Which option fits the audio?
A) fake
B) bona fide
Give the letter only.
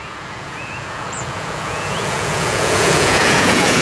A